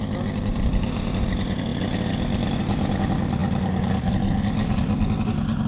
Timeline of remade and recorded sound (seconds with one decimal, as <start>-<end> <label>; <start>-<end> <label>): 0.0-5.7 recorded